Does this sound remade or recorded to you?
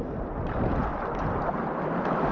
recorded